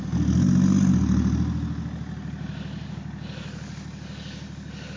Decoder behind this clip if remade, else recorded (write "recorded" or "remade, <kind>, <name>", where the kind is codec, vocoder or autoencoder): recorded